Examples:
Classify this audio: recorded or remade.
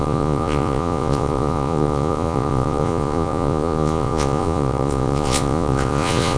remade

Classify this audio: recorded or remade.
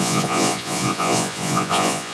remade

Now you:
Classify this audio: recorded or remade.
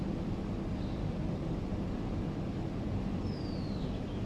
recorded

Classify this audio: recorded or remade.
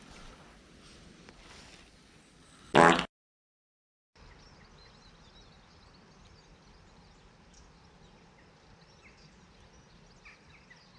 recorded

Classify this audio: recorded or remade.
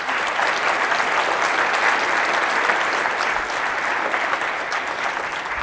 recorded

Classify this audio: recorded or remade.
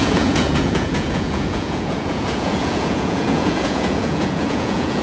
remade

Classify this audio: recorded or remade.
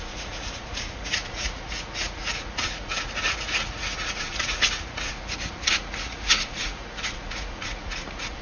remade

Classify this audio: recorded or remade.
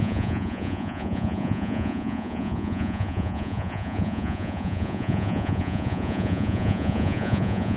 remade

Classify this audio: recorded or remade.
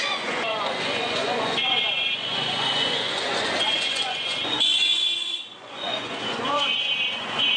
remade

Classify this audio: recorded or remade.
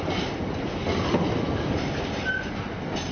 recorded